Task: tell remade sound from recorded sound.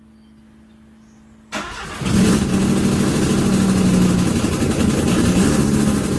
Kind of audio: recorded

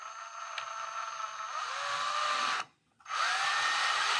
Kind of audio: recorded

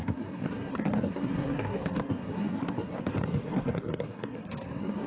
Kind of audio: remade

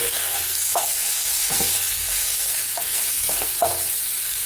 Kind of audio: remade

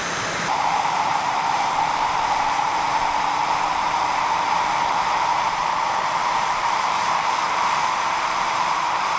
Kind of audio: remade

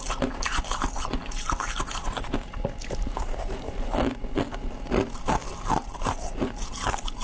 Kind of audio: recorded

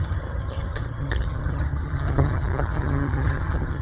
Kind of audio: remade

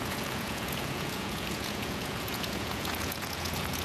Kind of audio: remade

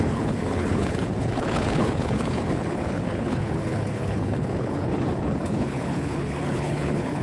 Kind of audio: remade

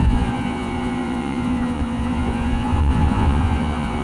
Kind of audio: remade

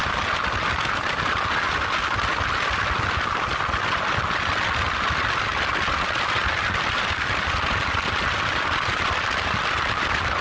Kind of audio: recorded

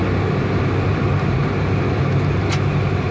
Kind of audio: recorded